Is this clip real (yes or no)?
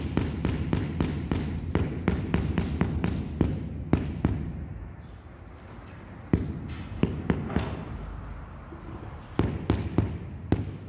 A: yes